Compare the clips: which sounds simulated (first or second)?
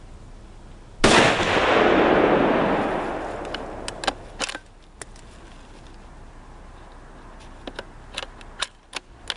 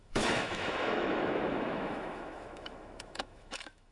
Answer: second